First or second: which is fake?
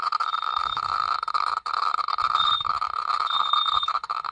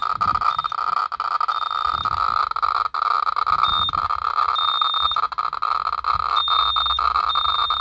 first